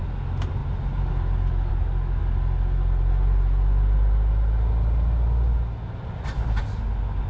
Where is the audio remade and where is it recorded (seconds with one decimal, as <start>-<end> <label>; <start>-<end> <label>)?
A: 0.0-7.3 recorded